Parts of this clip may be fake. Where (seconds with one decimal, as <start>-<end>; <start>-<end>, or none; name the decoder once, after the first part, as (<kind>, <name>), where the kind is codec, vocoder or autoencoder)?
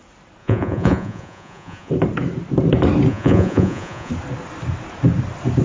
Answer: 0.4-1.9 (vocoder, Vocos); 3.1-4.1